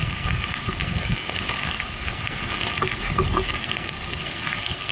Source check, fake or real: fake